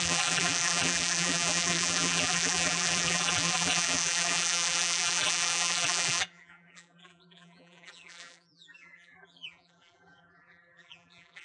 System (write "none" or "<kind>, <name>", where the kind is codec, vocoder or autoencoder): vocoder, BigVGAN v2